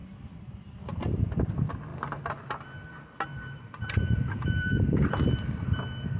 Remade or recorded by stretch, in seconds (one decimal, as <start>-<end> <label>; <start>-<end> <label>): 0.0-1.5 remade; 1.5-3.3 recorded; 3.3-5.6 remade; 5.6-6.2 recorded